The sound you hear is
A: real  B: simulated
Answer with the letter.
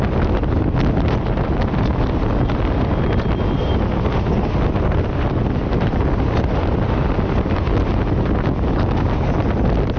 A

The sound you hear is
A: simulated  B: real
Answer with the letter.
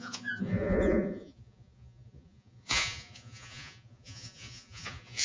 A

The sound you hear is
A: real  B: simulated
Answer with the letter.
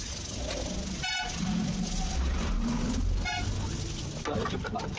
A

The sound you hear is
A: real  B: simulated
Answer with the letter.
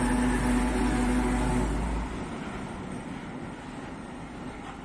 A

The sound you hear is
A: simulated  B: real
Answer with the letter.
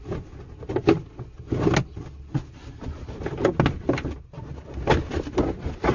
B